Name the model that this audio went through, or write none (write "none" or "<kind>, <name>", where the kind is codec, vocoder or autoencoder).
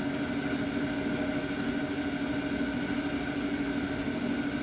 none